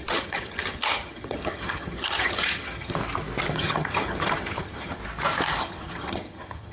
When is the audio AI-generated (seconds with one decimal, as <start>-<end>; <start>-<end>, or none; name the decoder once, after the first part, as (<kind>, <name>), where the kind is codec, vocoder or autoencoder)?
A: 0.0-3.0 (vocoder, HiFi-GAN); 3.5-5.0; 5.6-6.7